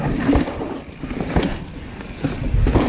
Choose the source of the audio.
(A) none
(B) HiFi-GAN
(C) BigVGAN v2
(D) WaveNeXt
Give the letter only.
A